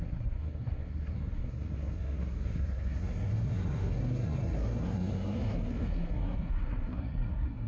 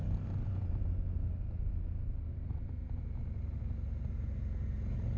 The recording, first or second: second